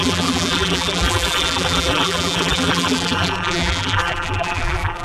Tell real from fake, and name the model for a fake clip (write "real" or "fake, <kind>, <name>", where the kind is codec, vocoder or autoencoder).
fake, vocoder, BigVGAN v2